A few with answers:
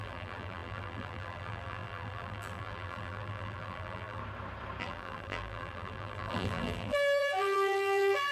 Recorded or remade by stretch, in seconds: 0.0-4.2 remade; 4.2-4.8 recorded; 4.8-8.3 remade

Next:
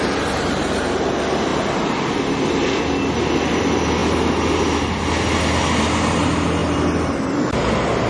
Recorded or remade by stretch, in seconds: 0.0-1.5 recorded; 1.5-2.8 remade; 2.8-8.1 recorded

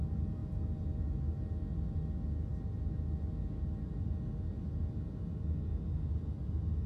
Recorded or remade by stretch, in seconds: 0.0-6.9 recorded